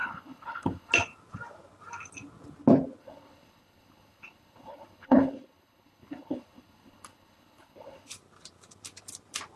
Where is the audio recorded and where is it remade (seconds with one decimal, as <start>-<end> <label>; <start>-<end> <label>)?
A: 0.0-0.9 remade; 0.9-3.0 recorded; 3.0-8.1 remade; 8.1-9.6 recorded

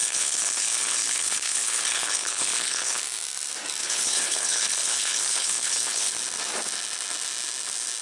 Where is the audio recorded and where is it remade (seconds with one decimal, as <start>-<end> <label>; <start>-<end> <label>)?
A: 0.0-3.0 remade; 3.0-3.8 recorded; 3.8-6.1 remade; 6.1-8.0 recorded

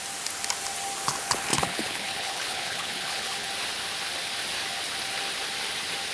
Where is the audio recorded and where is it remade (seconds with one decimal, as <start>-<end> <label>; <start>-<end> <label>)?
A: 0.0-1.5 recorded; 1.5-3.5 remade; 3.5-6.1 recorded

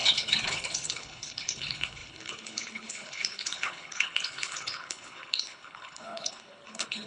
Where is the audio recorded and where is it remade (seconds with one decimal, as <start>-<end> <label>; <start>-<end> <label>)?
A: 0.0-7.1 remade

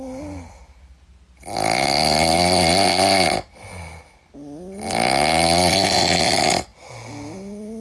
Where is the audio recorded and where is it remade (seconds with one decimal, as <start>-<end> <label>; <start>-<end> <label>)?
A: 0.0-7.8 recorded

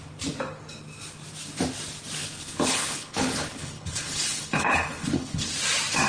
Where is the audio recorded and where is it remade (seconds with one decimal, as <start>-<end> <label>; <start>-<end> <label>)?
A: 0.0-2.2 recorded; 2.2-5.5 remade; 5.5-6.1 recorded